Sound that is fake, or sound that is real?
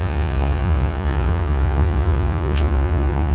fake